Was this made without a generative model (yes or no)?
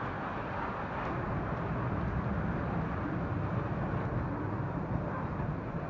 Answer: yes